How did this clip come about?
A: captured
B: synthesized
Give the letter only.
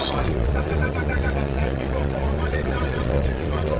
B